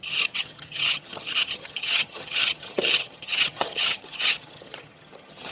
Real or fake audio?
fake